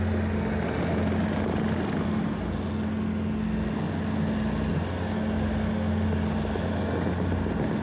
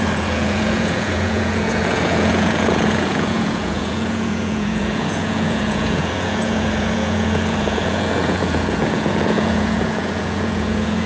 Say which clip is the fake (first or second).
second